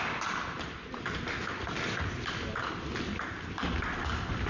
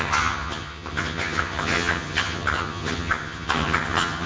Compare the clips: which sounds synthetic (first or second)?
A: second